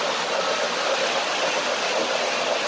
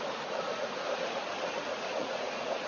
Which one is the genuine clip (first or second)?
first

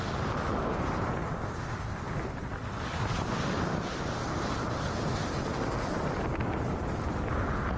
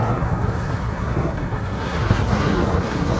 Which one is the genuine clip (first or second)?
first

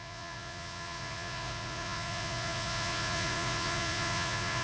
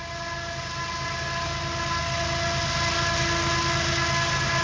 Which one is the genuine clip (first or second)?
second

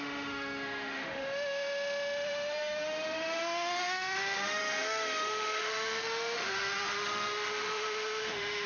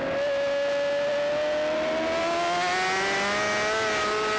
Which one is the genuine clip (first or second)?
second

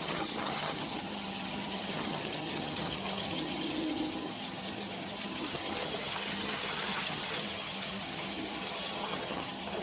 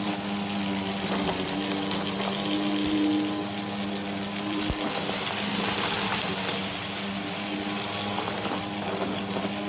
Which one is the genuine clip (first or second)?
second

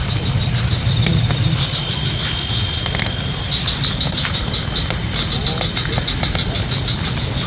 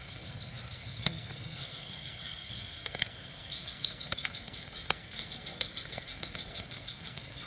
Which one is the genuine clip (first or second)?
first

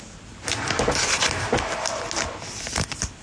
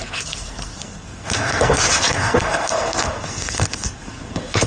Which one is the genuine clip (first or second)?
first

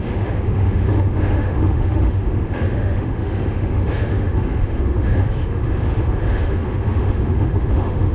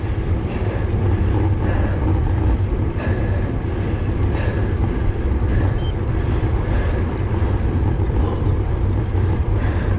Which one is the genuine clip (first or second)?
second